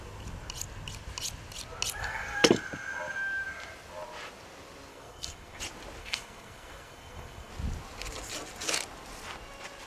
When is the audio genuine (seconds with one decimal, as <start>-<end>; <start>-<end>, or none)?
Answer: 0.0-2.0; 2.5-4.9; 5.6-6.0; 7.5-9.9